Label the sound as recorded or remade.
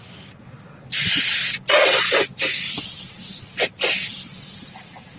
recorded